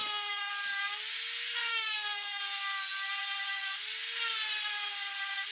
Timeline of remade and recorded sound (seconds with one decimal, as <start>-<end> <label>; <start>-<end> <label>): 0.0-0.5 remade; 0.5-1.7 recorded; 1.7-2.4 remade; 2.4-5.5 recorded